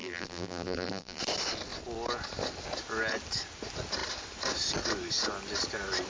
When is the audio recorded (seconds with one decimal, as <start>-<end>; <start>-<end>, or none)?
1.2-6.1